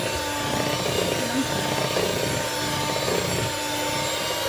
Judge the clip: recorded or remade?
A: recorded